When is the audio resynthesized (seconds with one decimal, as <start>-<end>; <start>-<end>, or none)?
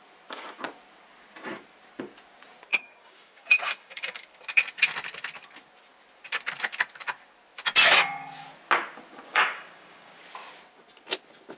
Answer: 2.7-4.2; 9.3-10.2